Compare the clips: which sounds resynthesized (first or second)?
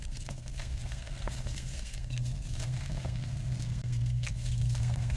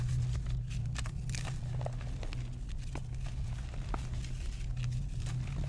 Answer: first